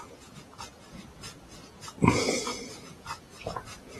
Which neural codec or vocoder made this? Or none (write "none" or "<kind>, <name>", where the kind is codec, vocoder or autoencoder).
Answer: vocoder, Vocos